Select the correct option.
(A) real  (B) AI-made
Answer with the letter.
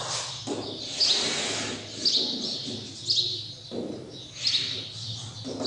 A